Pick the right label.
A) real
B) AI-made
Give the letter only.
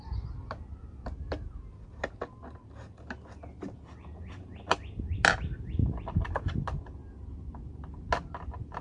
A